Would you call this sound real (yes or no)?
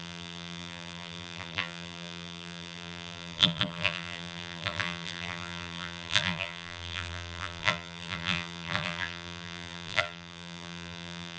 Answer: no